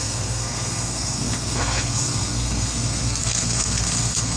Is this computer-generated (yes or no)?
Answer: yes